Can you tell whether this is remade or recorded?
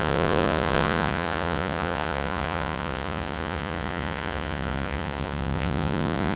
remade